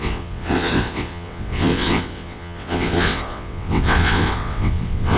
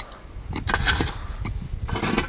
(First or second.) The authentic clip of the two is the second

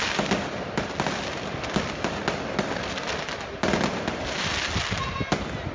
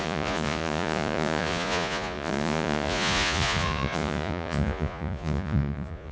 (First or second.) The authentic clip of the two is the first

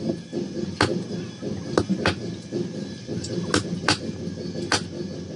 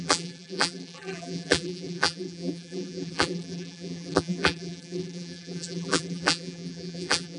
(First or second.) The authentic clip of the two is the first